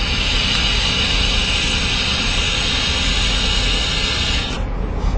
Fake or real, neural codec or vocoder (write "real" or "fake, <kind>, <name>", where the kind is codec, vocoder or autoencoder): real